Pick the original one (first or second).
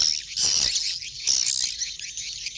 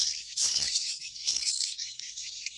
first